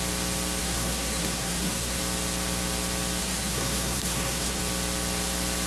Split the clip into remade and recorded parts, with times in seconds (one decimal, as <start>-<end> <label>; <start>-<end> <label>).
0.0-0.6 recorded; 0.6-2.0 remade; 2.0-3.2 recorded; 3.2-4.6 remade; 4.6-5.7 recorded